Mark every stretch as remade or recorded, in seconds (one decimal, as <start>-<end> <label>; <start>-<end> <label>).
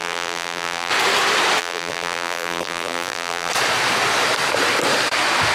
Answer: 0.0-0.9 remade; 0.9-1.6 recorded; 1.6-3.5 remade; 3.5-5.5 recorded